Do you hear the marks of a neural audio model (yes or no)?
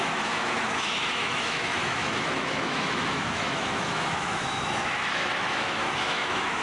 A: yes